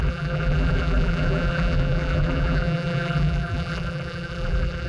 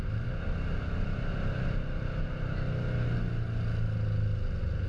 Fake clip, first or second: first